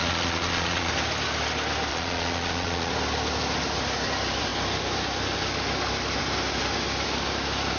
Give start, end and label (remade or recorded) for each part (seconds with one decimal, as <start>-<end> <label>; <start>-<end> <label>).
0.0-0.9 remade; 0.9-1.9 recorded; 1.9-2.9 remade; 2.9-7.8 recorded

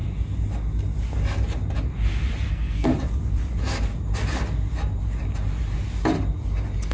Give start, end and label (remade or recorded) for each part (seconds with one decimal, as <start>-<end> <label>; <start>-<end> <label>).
0.0-2.5 recorded; 2.5-2.9 remade; 2.9-6.9 recorded

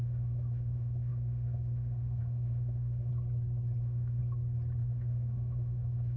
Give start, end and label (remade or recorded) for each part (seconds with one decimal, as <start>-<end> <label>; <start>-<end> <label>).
0.0-3.1 remade; 3.1-3.8 recorded; 3.8-4.2 remade; 4.2-4.8 recorded; 4.8-6.2 remade

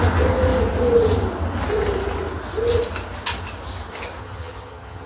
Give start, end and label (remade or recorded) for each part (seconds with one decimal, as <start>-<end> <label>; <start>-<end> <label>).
0.0-4.2 recorded; 4.2-5.1 remade

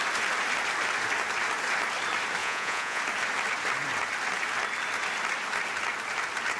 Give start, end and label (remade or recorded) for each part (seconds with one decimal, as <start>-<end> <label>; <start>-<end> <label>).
0.0-2.4 recorded; 2.4-3.0 remade; 3.0-6.6 recorded